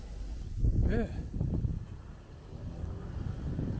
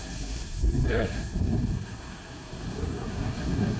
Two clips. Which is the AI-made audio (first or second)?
second